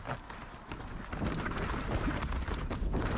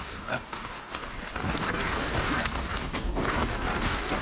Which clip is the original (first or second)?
first